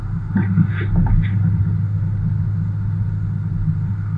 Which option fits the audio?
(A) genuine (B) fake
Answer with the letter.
A